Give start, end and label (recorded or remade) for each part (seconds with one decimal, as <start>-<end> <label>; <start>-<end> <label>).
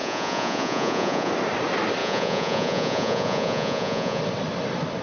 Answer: 0.0-1.3 remade; 1.3-2.0 recorded; 2.0-4.2 remade; 4.2-5.0 recorded